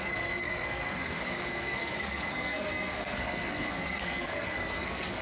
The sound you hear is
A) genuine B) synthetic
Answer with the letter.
B